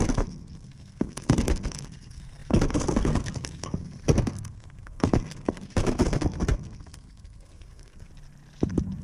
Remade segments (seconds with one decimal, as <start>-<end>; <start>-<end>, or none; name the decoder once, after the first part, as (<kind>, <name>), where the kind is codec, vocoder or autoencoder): 0.0-8.1 (codec, SNAC)